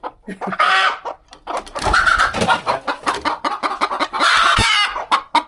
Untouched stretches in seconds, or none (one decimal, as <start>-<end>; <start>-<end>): 0.0-5.5